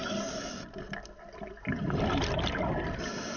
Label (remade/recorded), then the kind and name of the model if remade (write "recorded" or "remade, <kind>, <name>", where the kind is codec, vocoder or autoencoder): recorded